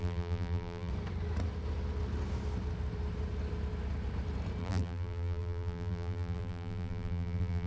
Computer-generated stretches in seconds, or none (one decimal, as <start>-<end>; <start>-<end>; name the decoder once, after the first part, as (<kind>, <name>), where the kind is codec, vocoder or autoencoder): 0.0-0.9 (vocoder, BigVGAN v2); 4.6-7.7